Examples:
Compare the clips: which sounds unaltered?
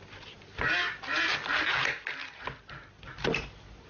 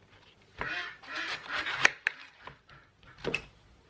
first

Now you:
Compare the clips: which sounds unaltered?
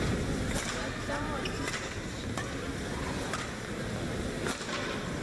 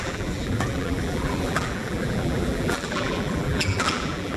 first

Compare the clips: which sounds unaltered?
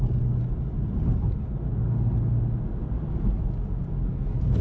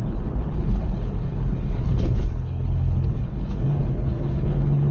first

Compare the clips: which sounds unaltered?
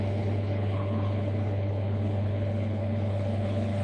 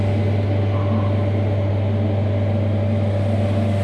second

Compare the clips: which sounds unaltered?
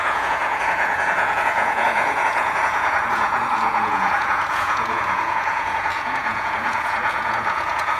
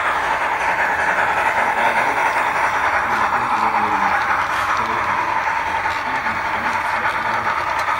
second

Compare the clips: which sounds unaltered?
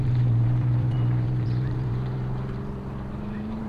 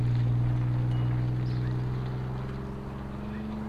second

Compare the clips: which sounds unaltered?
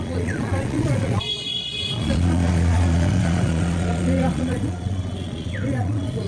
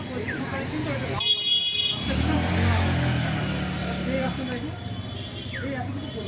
second